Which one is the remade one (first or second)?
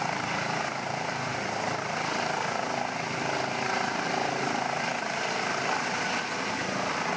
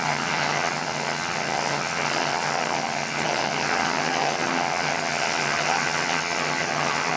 second